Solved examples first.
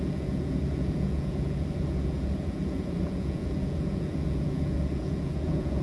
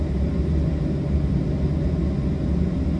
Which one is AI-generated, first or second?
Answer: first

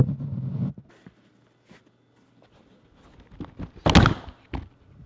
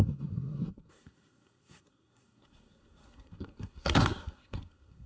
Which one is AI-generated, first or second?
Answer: second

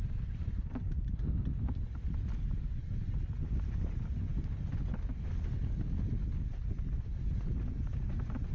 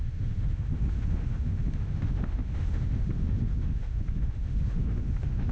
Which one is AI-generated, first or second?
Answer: second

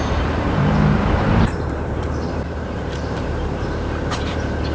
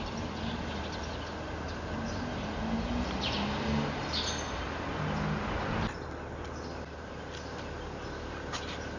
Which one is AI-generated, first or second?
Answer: first